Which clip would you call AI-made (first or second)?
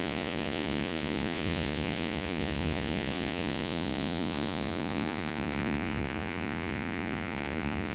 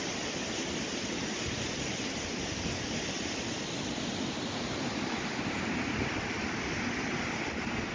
first